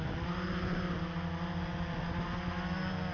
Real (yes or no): yes